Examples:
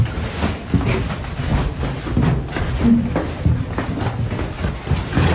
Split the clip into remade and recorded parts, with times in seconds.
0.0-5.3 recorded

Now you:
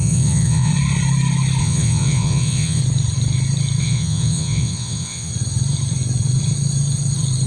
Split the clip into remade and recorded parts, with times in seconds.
0.0-0.7 remade; 0.7-1.6 recorded; 1.6-2.8 remade; 2.8-3.8 recorded; 3.8-5.3 remade; 5.3-7.5 recorded

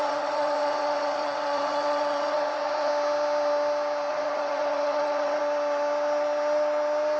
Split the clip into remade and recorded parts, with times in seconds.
0.0-2.9 remade; 2.9-4.1 recorded; 4.1-5.4 remade; 5.4-7.2 recorded

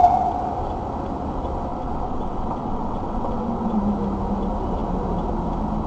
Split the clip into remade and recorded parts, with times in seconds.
0.0-1.7 recorded; 1.7-3.8 remade; 3.8-5.9 recorded

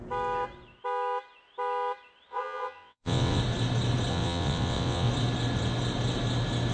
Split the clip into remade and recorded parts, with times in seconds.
0.0-2.3 recorded; 2.3-3.4 remade; 3.4-4.1 recorded; 4.1-5.1 remade; 5.1-6.7 recorded

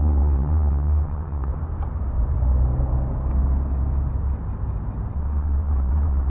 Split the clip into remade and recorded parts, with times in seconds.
0.0-1.5 remade; 1.5-5.1 recorded; 5.1-6.3 remade

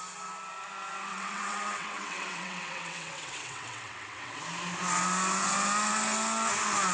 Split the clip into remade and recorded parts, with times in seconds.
0.0-1.1 recorded; 1.1-4.4 remade; 4.4-6.9 recorded

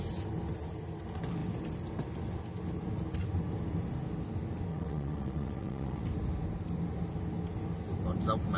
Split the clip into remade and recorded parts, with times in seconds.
0.0-4.7 recorded; 4.7-6.0 remade; 6.0-8.6 recorded